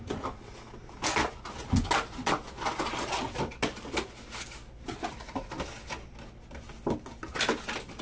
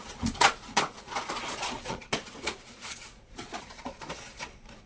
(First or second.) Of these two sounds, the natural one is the first